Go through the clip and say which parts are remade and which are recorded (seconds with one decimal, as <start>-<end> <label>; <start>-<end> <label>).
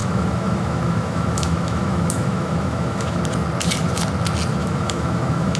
0.0-3.2 remade; 3.2-4.6 recorded; 4.6-5.6 remade